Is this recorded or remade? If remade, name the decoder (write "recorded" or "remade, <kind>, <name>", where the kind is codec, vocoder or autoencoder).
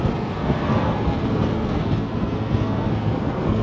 remade, codec, SNAC